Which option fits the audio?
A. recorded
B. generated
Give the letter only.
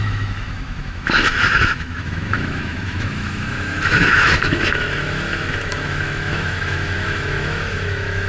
B